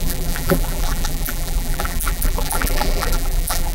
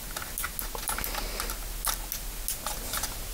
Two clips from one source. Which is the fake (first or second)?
first